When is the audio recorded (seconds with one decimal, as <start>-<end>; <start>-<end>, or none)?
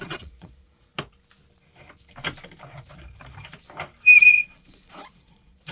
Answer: 0.9-4.3